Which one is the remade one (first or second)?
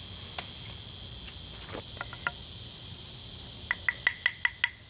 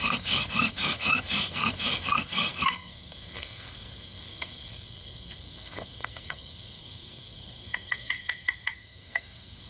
second